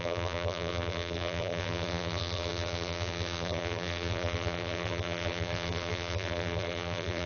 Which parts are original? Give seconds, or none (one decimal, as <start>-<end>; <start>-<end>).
none